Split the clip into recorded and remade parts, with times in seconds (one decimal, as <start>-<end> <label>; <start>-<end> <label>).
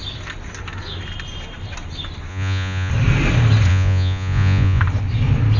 0.0-2.3 recorded; 2.3-2.9 remade; 2.9-3.7 recorded; 3.7-4.8 remade; 4.8-5.6 recorded